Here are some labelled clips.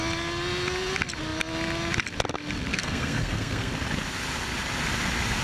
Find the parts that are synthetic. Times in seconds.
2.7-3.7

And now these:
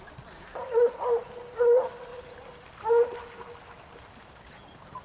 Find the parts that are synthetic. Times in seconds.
none

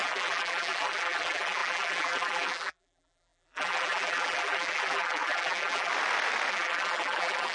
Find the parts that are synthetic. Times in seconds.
0.0-5.9; 6.5-7.5

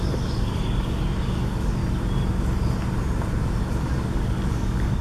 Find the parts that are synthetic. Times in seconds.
0.0-1.8; 3.6-5.0